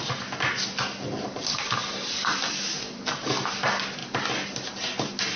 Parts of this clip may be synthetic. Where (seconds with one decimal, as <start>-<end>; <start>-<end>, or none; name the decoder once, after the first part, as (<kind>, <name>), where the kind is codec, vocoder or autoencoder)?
none